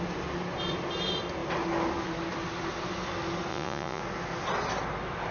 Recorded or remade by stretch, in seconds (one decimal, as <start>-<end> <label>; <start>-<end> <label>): 0.0-3.5 recorded; 3.5-4.0 remade; 4.0-5.3 recorded